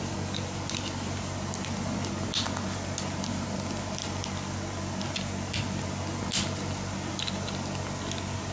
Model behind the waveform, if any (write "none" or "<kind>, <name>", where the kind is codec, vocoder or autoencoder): none